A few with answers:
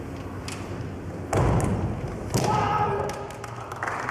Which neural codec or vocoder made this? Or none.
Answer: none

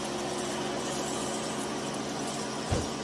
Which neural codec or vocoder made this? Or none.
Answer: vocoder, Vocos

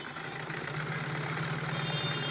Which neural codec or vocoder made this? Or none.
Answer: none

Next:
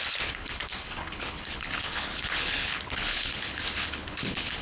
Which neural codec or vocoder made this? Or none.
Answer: codec, HILCodec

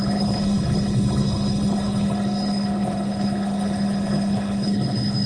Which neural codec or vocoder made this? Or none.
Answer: codec, HILCodec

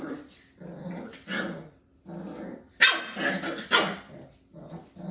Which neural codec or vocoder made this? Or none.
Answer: none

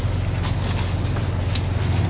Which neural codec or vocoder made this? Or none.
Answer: none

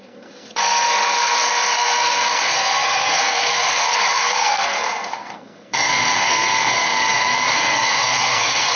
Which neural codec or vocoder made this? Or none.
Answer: codec, SNAC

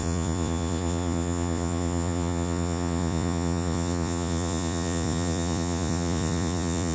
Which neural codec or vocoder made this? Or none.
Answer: vocoder, Vocos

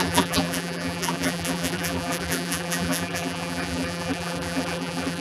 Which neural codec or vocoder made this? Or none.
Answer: vocoder, BigVGAN v2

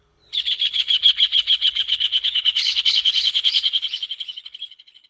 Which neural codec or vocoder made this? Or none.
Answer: codec, HILCodec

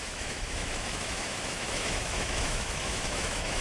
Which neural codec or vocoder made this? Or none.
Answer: autoencoder, DAC-VAE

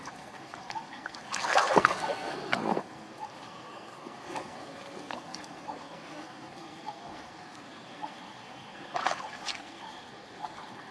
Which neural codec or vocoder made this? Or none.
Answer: codec, SNAC